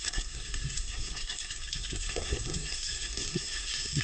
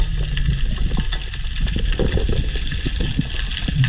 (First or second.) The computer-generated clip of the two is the first